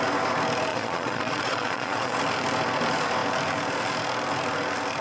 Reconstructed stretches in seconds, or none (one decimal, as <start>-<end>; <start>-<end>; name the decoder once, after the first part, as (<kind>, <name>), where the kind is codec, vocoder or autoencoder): 0.7-2.2 (vocoder, Vocos)